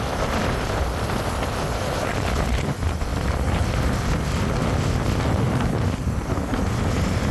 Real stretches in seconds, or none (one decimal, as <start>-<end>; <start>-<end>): 0.0-7.3